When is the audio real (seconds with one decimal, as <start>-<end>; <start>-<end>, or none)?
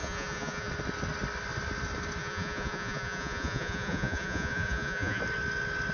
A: 0.7-2.2; 5.2-5.9